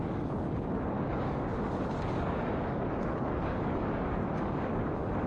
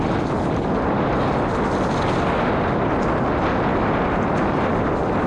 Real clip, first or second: second